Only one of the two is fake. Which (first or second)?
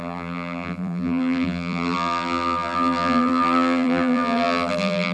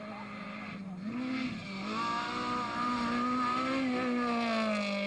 first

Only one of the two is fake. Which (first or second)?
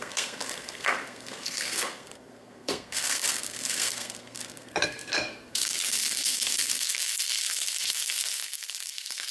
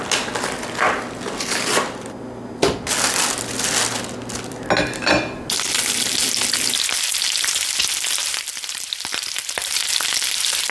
first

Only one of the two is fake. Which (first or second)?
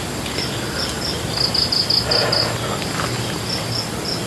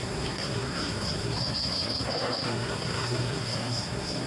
second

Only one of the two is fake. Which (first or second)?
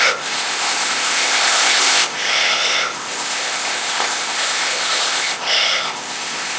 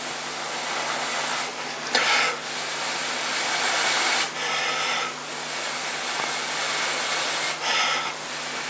first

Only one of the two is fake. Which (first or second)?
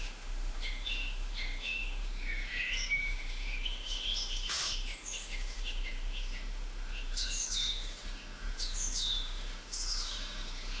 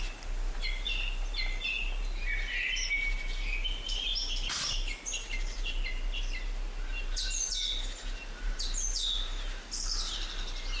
first